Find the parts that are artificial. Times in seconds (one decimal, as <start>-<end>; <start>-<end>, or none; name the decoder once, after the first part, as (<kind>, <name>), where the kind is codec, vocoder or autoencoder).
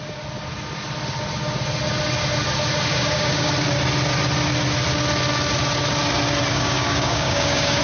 2.9-3.5 (codec, DAC); 6.5-7.8